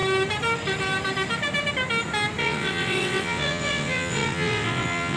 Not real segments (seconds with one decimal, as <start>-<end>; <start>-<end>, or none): 2.4-5.2

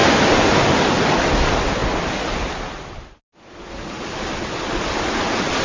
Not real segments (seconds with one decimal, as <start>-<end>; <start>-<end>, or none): none

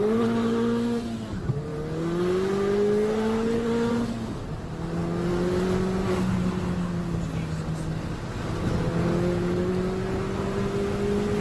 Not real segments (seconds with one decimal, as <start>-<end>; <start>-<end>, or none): none

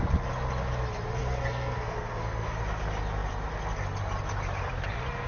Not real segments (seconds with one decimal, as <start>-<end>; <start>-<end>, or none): 1.2-2.6